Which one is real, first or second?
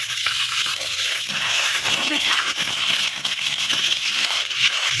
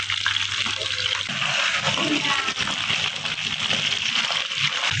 second